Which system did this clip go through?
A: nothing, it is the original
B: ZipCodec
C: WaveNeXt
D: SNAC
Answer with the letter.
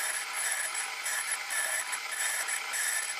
A